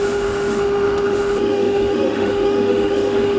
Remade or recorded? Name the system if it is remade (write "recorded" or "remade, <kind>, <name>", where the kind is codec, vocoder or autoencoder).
remade, autoencoder, DAC-VAE